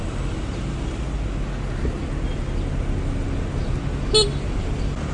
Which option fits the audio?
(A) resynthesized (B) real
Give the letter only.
B